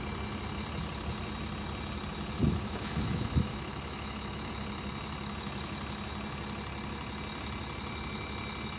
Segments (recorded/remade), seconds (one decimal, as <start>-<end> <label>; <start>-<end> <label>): 0.0-2.4 recorded; 2.4-4.5 remade; 4.5-8.8 recorded